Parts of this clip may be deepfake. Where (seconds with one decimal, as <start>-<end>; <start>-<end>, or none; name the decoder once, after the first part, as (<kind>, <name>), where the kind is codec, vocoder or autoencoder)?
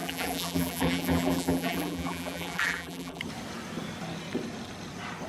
0.0-3.2 (vocoder, BigVGAN v2)